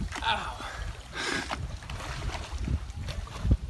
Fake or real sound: real